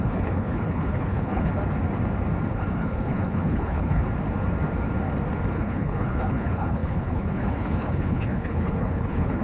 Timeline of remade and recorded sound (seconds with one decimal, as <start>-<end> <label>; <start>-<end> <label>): 0.0-1.5 remade; 1.5-2.5 recorded; 2.5-4.0 remade; 4.0-5.5 recorded; 5.5-9.4 remade